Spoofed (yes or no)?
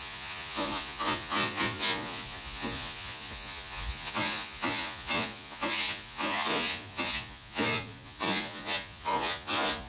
yes